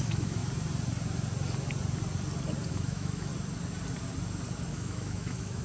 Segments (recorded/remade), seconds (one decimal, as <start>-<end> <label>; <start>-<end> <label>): 0.0-0.4 remade; 0.4-2.7 recorded; 2.7-3.3 remade; 3.3-4.7 recorded; 4.7-5.6 remade